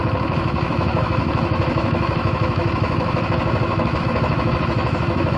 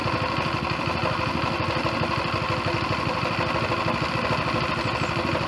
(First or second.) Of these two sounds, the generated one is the first